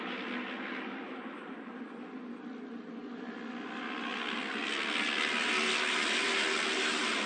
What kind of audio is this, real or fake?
real